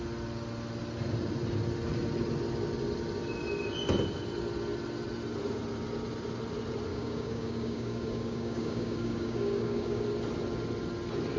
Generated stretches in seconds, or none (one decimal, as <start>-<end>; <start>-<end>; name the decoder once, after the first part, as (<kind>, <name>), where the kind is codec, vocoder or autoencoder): 6.9-10.0 (codec, DAC)